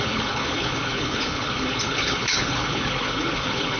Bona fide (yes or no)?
no